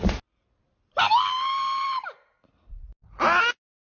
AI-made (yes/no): no